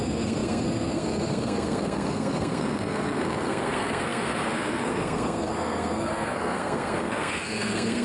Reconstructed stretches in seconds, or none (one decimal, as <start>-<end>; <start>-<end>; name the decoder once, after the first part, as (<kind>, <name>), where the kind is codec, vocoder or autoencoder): 0.0-8.0 (codec, SNAC)